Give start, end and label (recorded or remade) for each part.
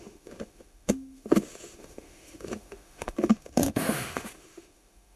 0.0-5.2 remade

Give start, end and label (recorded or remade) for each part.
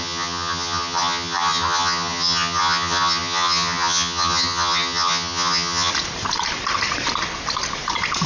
0.0-5.9 remade; 5.9-8.3 recorded